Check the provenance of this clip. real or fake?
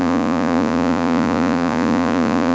fake